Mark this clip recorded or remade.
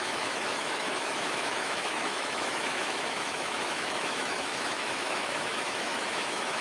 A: remade